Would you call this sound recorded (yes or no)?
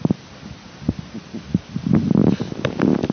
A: yes